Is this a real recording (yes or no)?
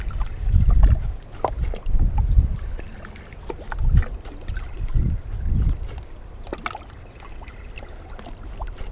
yes